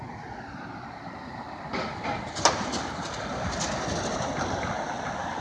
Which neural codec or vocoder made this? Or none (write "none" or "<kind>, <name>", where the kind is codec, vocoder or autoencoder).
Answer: none